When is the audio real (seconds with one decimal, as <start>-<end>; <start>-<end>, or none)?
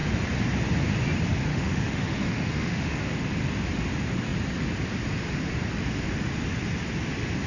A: 0.0-1.5; 3.0-7.5